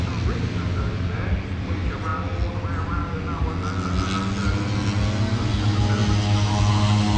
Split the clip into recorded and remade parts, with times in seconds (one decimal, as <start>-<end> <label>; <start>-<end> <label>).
0.0-7.2 recorded